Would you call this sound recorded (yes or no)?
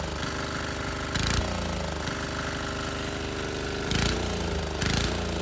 yes